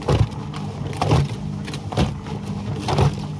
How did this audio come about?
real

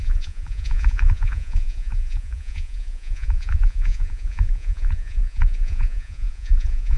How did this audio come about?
fake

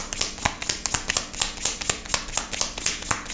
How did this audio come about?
real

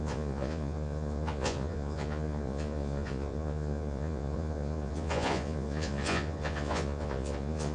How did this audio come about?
fake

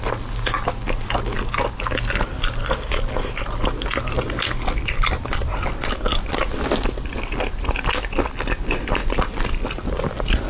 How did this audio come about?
real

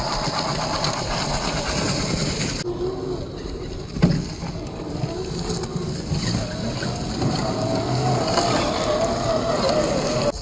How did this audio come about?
real